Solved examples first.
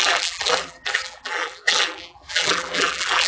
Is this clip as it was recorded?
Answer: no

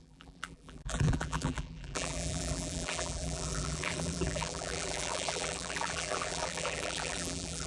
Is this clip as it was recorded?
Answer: no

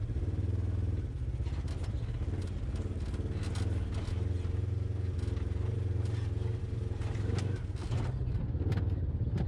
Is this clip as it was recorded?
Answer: yes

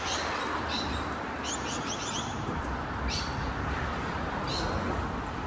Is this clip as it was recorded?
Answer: yes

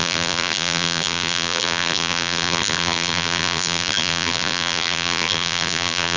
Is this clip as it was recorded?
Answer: no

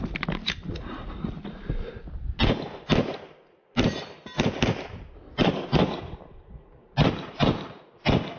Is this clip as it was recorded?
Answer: yes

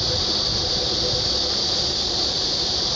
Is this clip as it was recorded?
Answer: no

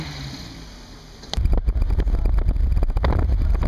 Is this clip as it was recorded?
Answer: yes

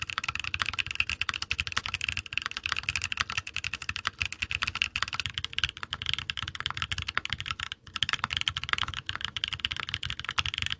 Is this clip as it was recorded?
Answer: yes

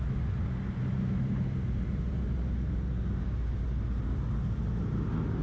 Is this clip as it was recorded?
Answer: yes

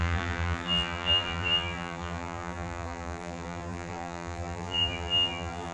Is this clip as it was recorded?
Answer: no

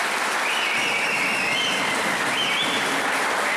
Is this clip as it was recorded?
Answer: yes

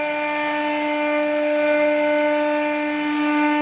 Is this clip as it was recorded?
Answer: yes